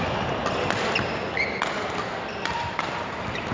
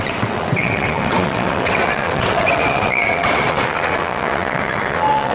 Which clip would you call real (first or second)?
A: first